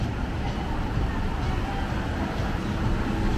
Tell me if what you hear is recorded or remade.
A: recorded